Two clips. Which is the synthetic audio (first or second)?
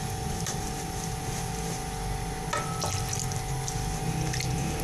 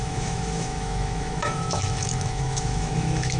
second